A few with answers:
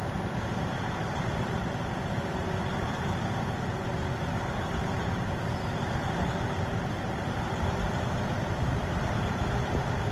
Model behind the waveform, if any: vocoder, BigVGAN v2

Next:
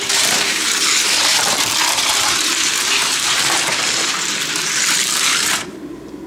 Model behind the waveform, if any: vocoder, BigVGAN v2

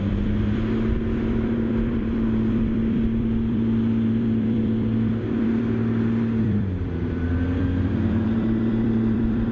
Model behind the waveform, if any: vocoder, BigVGAN v2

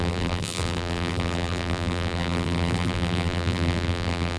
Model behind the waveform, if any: vocoder, BigVGAN v2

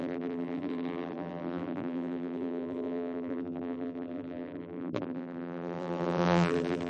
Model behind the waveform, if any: vocoder, BigVGAN v2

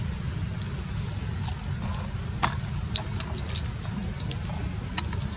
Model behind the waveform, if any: none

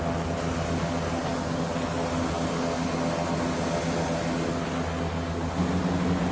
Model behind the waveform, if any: none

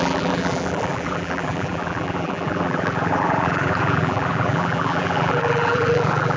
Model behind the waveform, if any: vocoder, BigVGAN v2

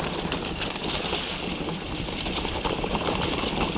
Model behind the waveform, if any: vocoder, BigVGAN v2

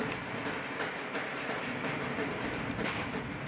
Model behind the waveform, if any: vocoder, BigVGAN v2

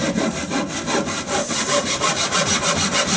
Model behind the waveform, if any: vocoder, BigVGAN v2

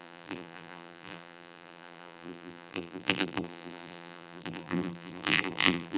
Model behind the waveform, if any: vocoder, BigVGAN v2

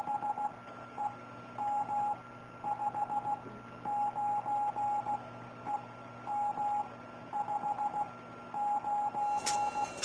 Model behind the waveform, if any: none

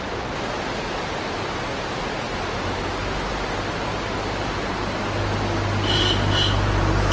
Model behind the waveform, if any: none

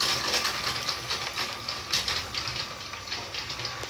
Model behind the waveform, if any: none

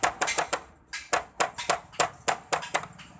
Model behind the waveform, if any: none